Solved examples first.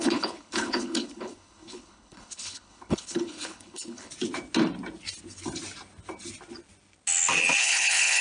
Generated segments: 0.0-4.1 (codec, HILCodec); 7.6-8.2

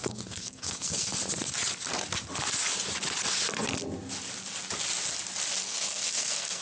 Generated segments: 0.0-1.2 (codec, SNAC); 5.6-6.6

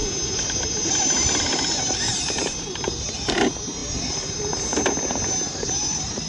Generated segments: none

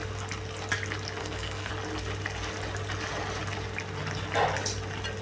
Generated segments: 1.2-1.7 (codec, SNAC)

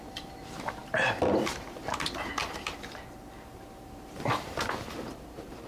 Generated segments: 0.0-5.7 (vocoder, BigVGAN v2)

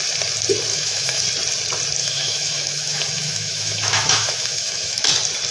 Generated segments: 0.7-1.2 (autoencoder, DAC-VAE); 2.0-5.1

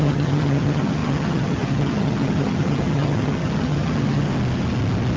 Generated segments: 0.0-4.3 (vocoder, HiFi-GAN)